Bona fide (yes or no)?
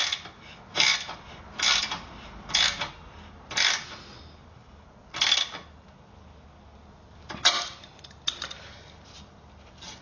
yes